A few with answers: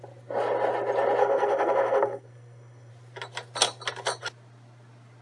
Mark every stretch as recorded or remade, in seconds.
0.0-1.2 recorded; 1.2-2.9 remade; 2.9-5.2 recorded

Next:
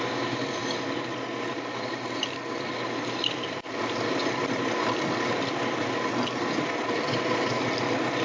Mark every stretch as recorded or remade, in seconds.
0.0-8.2 recorded

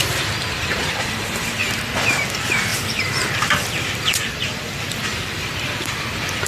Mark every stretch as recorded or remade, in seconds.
0.0-1.6 remade; 1.6-2.1 recorded; 2.1-6.5 remade